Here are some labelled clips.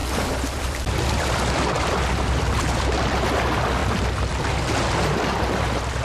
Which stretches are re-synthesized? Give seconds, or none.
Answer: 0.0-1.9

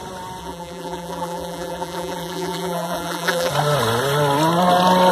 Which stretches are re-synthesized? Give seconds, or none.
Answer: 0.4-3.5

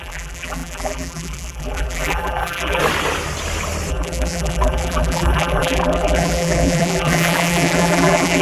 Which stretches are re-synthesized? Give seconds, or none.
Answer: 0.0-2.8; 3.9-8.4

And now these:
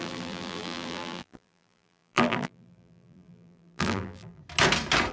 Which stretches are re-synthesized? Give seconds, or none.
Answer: 0.0-4.4